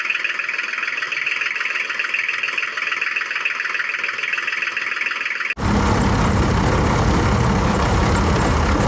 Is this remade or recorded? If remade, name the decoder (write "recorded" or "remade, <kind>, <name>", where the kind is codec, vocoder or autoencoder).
recorded